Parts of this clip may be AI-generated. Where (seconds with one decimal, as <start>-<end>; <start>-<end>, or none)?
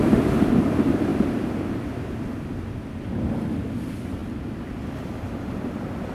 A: 0.0-1.1; 3.1-6.1